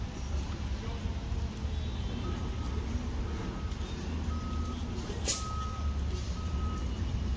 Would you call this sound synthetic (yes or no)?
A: no